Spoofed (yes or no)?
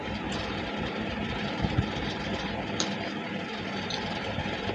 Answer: yes